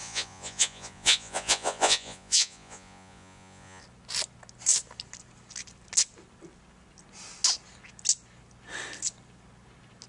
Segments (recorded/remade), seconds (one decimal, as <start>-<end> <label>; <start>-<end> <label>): 0.0-3.8 remade; 3.8-10.1 recorded